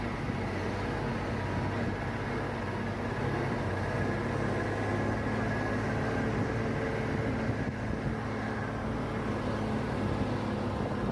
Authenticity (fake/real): real